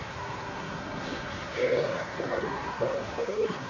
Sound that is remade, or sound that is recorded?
remade